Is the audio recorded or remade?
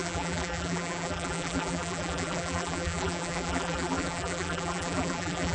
remade